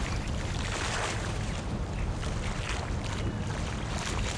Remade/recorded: recorded